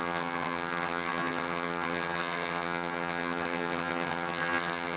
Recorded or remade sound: remade